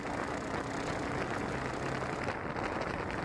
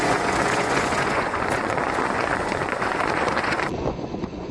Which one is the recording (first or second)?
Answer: first